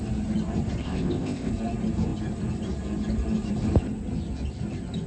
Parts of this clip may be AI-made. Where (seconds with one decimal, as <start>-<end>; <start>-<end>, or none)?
0.8-1.5